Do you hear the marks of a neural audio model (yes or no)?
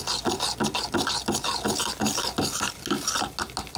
no